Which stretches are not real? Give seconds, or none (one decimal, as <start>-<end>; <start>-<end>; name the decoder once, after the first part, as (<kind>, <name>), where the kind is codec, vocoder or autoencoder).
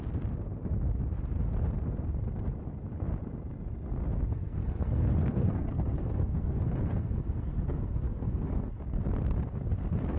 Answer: 4.3-8.7 (codec, SNAC)